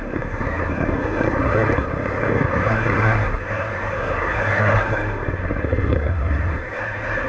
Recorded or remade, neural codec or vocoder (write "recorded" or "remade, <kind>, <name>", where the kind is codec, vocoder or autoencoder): remade, codec, SNAC